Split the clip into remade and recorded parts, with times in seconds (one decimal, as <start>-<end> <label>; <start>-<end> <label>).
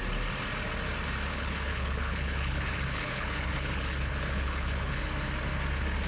0.0-1.3 recorded; 1.3-5.0 remade; 5.0-6.1 recorded